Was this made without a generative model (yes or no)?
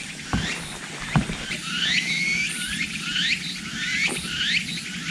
yes